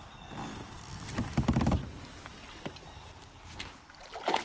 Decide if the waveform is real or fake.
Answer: real